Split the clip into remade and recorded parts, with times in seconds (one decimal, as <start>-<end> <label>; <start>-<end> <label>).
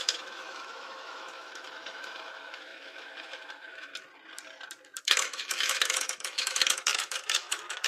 0.0-3.9 remade; 3.9-5.0 recorded; 5.0-7.9 remade